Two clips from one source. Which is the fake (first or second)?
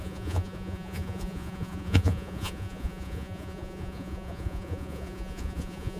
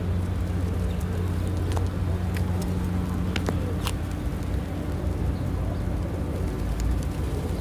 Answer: first